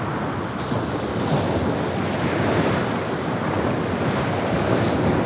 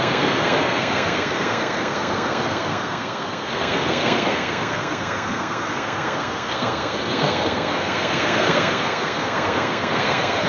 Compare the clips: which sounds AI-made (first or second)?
second